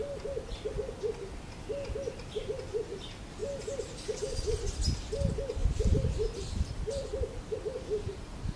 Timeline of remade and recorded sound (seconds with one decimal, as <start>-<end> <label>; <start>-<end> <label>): 0.0-5.6 recorded; 5.6-7.3 remade; 7.3-8.6 recorded